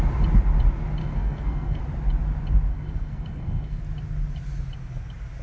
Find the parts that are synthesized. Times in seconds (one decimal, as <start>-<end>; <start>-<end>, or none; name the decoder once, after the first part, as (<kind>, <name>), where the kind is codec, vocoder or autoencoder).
1.0-1.8 (codec, SNAC); 2.7-3.8